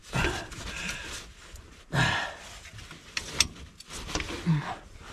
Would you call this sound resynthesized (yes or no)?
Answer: no